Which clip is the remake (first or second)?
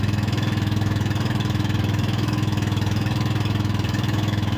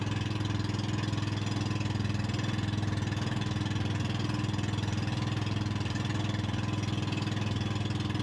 first